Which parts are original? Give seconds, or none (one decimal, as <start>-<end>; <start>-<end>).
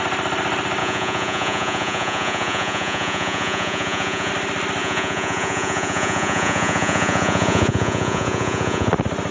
0.0-0.8; 4.3-4.8; 8.9-9.3